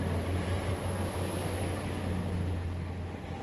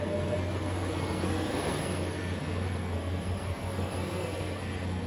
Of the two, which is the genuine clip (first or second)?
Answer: first